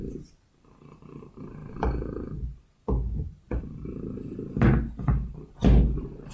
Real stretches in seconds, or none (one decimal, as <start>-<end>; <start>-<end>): 0.0-6.3